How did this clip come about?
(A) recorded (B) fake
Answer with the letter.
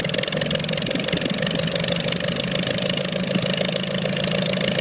A